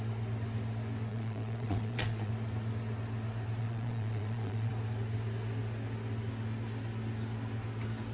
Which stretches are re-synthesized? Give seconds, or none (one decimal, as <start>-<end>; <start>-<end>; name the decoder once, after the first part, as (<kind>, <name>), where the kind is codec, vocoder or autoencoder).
1.1-2.3 (vocoder, Vocos); 3.6-4.7